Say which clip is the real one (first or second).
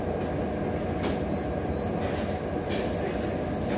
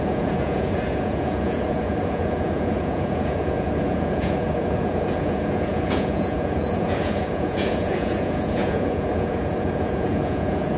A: first